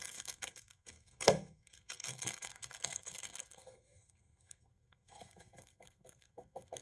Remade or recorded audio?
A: remade